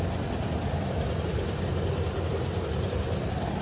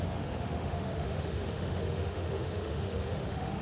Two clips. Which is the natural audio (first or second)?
first